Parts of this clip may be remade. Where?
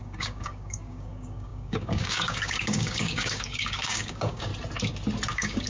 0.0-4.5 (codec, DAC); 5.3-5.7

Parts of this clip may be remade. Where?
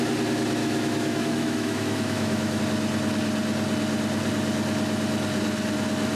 0.6-2.6 (autoencoder, DAC-VAE)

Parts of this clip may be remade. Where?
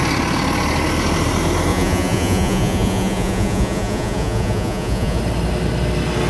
1.7-5.2 (vocoder, Vocos)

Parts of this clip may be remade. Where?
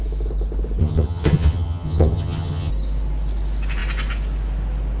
0.8-2.7 (vocoder, HiFi-GAN)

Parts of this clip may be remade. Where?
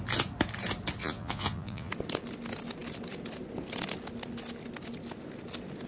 1.0-1.9 (vocoder, Vocos)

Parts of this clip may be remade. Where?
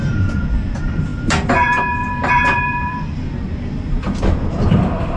0.0-5.2 (vocoder, BigVGAN v2)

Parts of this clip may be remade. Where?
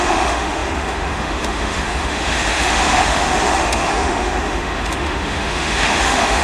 0.0-6.4 (autoencoder, DAC-VAE)